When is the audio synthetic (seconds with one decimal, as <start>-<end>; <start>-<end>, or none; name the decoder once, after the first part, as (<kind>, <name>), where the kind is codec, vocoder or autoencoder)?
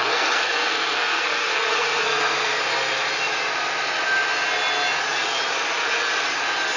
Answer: 0.0-2.5 (codec, SNAC)